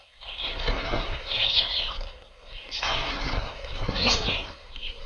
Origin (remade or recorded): remade